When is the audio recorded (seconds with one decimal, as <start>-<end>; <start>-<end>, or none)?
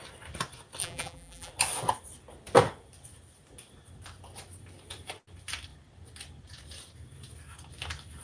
0.0-0.8; 1.5-8.2